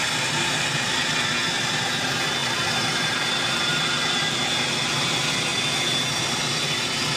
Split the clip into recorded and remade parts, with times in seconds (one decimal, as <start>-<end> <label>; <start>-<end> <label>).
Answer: 0.0-2.4 recorded; 2.4-5.1 remade; 5.1-7.2 recorded